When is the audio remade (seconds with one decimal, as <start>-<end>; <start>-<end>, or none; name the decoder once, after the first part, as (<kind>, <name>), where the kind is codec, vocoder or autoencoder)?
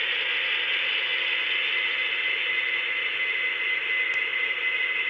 none